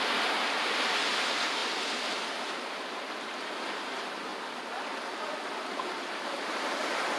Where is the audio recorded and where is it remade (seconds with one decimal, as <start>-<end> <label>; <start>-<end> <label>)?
0.0-1.6 remade; 1.6-2.3 recorded; 2.3-4.3 remade; 4.3-6.4 recorded; 6.4-7.2 remade